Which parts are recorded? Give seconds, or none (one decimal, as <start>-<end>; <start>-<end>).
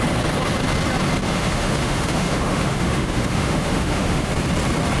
0.0-1.3; 4.3-5.0